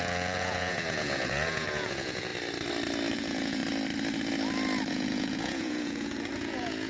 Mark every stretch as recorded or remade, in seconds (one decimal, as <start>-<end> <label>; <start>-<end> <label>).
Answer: 0.0-2.3 remade; 2.3-3.1 recorded; 3.1-3.6 remade; 3.6-4.9 recorded; 4.9-6.9 remade